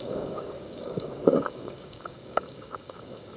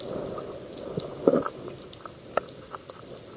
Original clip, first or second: second